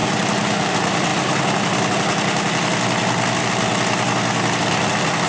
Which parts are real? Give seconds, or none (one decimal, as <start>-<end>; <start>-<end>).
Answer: 0.0-5.3